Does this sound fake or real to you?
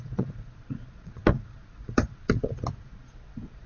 fake